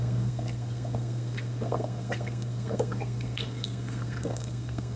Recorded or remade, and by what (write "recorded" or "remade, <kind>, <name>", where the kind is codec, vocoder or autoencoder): remade, codec, SNAC